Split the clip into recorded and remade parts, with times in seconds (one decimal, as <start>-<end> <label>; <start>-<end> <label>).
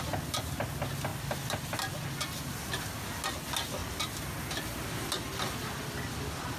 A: 0.0-6.6 recorded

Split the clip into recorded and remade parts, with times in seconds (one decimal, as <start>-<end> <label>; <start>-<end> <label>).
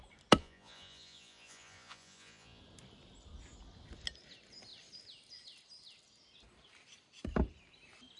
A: 0.0-0.4 recorded; 0.4-2.6 remade; 2.6-8.2 recorded